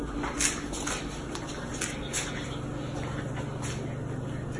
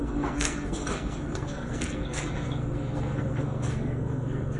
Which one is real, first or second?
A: first